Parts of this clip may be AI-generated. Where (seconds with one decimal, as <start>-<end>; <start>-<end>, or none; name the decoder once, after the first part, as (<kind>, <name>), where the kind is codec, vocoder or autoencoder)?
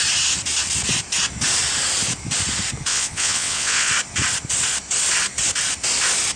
2.9-3.9 (vocoder, WaveNeXt)